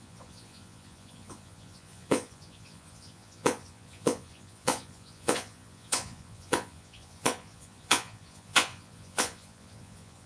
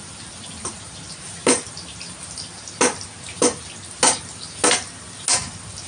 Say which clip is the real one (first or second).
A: second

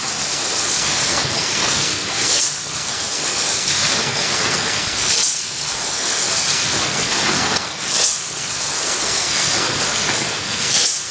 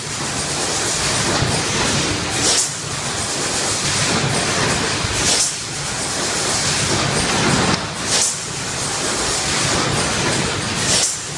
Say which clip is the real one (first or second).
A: second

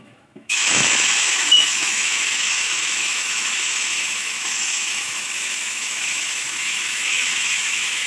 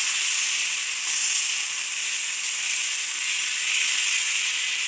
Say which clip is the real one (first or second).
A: second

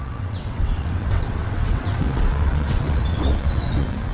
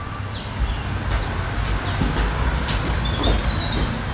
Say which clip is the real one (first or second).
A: second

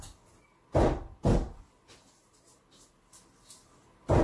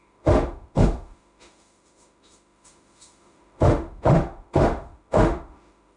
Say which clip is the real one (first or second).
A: first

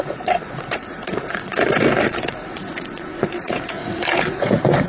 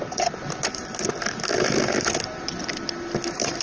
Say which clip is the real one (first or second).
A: second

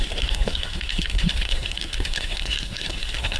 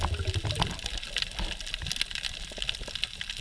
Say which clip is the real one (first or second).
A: second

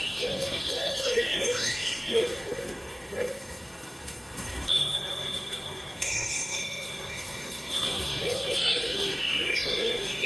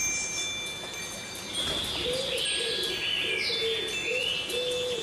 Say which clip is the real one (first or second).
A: second